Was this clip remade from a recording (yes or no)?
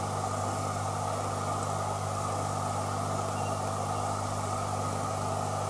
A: no